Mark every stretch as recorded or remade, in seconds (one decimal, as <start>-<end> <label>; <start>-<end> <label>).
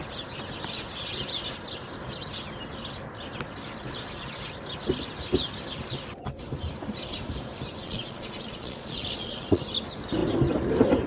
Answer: 0.0-7.8 recorded; 7.8-9.6 remade; 9.6-11.1 recorded